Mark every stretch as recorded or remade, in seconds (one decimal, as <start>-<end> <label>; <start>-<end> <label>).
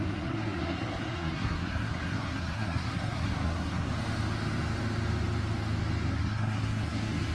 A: 0.0-3.9 remade; 3.9-6.1 recorded; 6.1-7.3 remade